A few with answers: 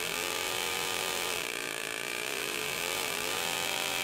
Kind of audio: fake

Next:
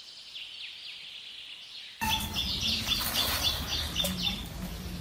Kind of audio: real